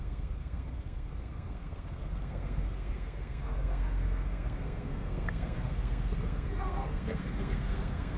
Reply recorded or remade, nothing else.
remade